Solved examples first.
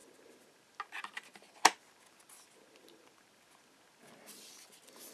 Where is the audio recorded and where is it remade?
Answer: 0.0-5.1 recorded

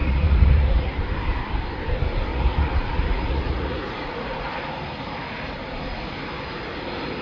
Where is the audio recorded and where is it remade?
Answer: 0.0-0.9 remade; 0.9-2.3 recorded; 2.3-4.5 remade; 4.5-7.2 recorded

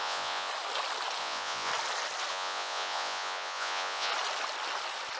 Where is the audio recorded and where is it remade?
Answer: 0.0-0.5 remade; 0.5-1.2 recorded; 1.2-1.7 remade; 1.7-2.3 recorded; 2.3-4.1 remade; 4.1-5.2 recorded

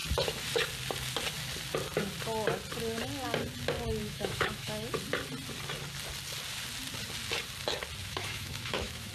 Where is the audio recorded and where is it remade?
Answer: 0.0-4.0 recorded; 4.0-4.9 remade; 4.9-8.0 recorded; 8.0-9.1 remade